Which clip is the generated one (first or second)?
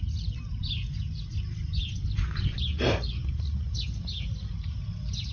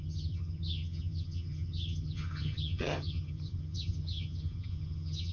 second